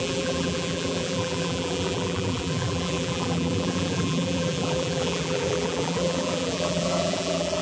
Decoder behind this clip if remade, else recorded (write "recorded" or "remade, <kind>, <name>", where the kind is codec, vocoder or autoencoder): remade, vocoder, BigVGAN v2